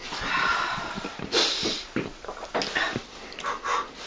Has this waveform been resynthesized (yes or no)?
no